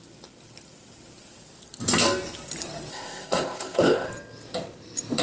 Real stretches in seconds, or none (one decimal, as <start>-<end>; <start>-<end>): 0.0-2.9; 4.1-5.2